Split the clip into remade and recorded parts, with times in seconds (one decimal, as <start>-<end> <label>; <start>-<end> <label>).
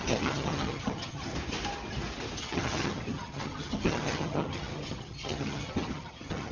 0.0-1.3 remade; 1.3-2.4 recorded; 2.4-6.5 remade